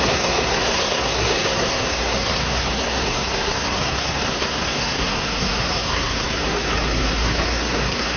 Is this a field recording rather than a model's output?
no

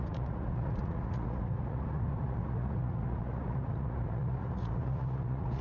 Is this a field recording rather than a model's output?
no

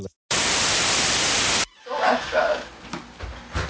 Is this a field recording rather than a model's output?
yes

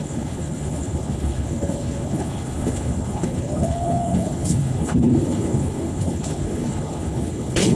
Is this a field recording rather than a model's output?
no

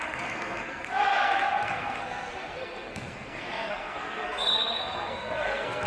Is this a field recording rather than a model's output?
no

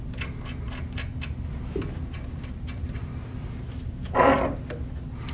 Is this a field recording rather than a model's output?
yes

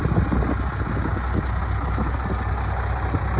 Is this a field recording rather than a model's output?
yes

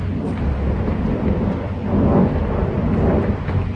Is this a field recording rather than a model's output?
yes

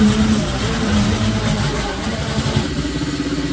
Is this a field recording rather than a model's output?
yes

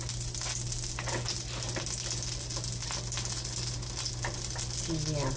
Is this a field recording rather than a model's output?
yes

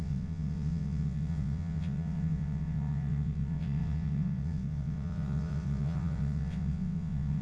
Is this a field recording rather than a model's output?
no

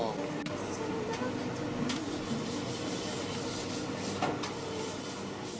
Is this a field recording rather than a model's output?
yes